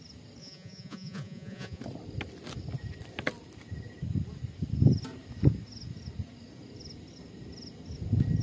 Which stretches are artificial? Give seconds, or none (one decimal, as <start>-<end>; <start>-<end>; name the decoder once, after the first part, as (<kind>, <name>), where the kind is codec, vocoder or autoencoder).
0.4-1.8 (vocoder, Vocos)